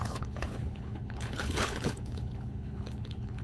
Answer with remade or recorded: remade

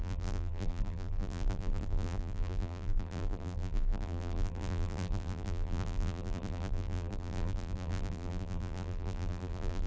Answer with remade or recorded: remade